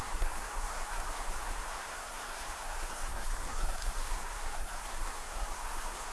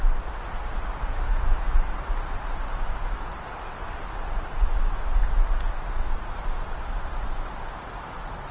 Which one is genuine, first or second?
second